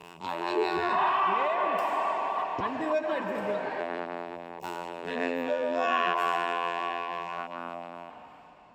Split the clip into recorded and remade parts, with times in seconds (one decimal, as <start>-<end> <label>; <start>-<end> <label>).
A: 0.0-0.9 remade; 0.9-3.8 recorded; 3.8-8.1 remade; 8.1-8.7 recorded